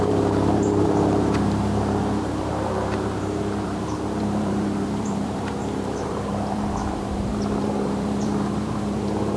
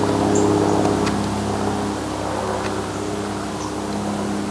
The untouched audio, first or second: second